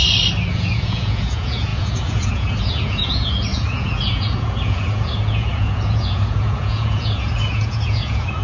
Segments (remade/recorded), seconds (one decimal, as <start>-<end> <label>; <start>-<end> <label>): 0.0-0.5 recorded; 0.5-8.4 remade